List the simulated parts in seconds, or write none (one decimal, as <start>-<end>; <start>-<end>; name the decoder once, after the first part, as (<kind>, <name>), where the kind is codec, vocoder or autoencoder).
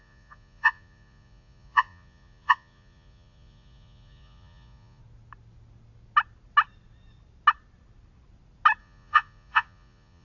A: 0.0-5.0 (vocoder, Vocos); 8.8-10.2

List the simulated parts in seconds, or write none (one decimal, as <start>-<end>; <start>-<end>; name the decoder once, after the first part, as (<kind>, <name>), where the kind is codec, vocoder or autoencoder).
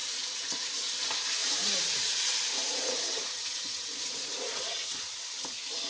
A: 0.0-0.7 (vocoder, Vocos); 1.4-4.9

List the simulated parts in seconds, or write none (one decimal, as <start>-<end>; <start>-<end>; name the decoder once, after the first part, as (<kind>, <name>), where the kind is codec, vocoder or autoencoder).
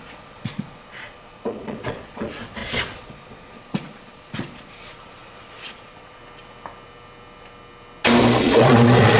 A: 0.0-6.2 (vocoder, Vocos); 8.4-9.2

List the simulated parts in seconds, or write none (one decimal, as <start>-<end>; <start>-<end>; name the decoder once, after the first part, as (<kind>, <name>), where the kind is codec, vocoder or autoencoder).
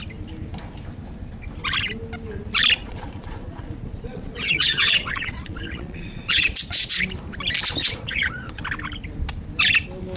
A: 2.8-7.0 (vocoder, Vocos); 7.8-8.6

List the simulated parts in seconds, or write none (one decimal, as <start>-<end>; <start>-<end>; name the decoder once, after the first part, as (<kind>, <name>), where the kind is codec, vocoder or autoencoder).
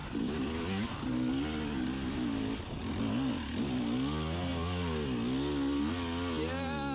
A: none